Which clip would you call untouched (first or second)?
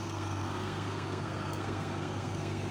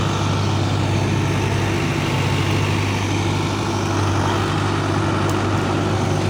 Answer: second